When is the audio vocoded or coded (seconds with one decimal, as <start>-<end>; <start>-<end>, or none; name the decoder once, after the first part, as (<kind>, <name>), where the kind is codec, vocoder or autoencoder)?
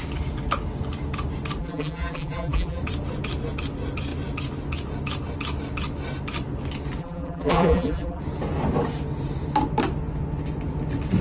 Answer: 1.6-2.8 (vocoder, BigVGAN v2); 7.0-8.2